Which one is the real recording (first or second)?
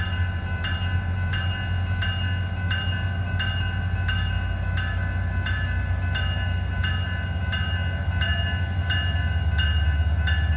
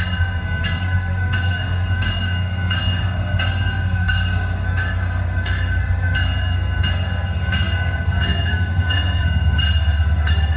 first